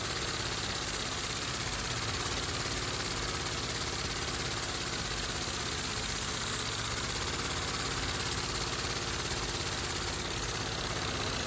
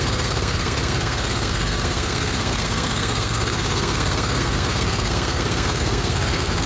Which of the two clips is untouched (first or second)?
first